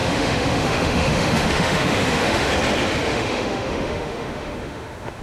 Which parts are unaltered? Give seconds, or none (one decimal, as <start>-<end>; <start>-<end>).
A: 2.5-3.1